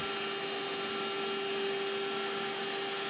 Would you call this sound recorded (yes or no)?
yes